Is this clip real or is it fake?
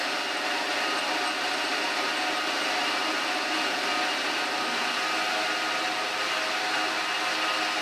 real